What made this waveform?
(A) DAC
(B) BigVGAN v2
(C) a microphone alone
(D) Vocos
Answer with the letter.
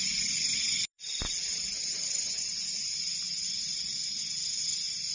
C